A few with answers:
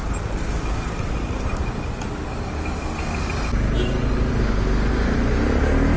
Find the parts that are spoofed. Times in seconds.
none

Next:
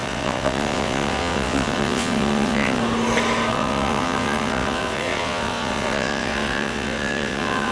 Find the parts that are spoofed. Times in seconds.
0.0-2.8 (vocoder, WaveNeXt); 3.5-7.7

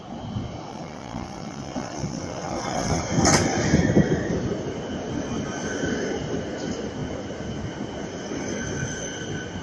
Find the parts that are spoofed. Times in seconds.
0.7-3.0 (vocoder, WaveNeXt)

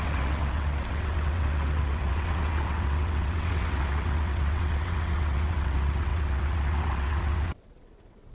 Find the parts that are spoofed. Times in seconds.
0.0-8.3 (vocoder, WaveNeXt)

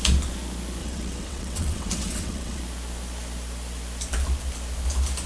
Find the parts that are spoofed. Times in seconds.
0.8-2.6 (vocoder, WaveNeXt)

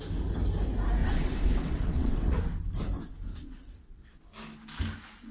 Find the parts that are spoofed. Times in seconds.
1.0-2.4 (vocoder, WaveNeXt); 3.3-4.2

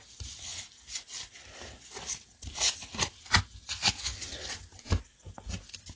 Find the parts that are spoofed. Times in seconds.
none